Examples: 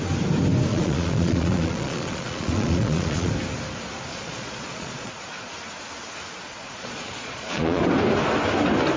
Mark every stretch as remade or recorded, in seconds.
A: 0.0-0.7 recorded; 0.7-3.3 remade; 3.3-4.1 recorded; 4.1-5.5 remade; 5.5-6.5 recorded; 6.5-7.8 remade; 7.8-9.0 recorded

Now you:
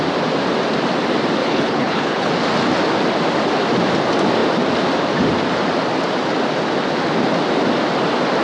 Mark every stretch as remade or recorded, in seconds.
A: 0.0-1.4 recorded; 1.4-2.3 remade; 2.3-8.4 recorded

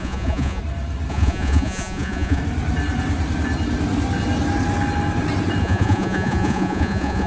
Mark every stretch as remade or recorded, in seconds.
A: 0.0-0.6 remade; 0.6-1.1 recorded; 1.1-2.4 remade; 2.4-5.6 recorded; 5.6-7.3 remade

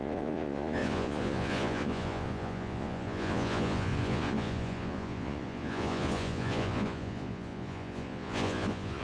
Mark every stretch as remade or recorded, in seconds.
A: 0.0-9.0 remade

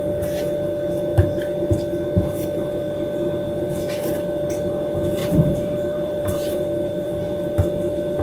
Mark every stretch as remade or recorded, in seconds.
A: 0.0-5.2 recorded; 5.2-7.1 remade; 7.1-8.2 recorded